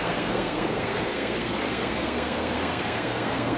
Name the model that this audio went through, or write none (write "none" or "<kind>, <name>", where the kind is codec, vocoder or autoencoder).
codec, SNAC